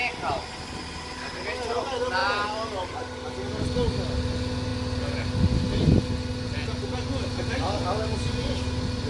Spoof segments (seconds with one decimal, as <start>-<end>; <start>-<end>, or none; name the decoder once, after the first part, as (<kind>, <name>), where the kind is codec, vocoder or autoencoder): none